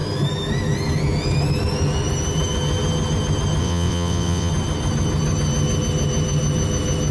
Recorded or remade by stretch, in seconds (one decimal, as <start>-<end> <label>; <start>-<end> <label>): 0.0-3.6 recorded; 3.6-4.5 remade; 4.5-7.1 recorded